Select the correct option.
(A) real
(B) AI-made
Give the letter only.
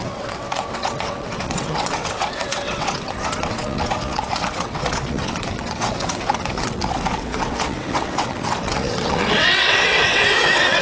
B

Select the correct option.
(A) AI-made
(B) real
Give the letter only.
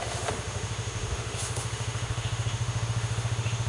A